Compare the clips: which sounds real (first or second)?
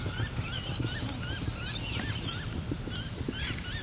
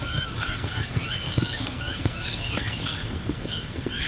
first